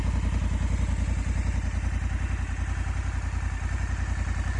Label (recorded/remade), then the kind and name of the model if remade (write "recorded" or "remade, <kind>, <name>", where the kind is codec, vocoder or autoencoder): recorded